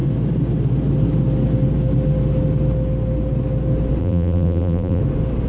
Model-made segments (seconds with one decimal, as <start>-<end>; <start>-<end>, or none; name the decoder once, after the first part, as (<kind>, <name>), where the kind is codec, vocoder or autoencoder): 4.0-5.0 (vocoder, BigVGAN v2)